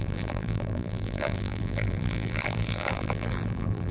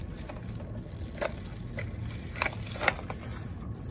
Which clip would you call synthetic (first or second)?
first